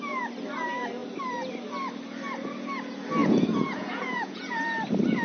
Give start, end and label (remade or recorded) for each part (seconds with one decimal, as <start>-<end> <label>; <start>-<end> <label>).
0.0-3.2 recorded; 3.2-4.6 remade; 4.6-5.2 recorded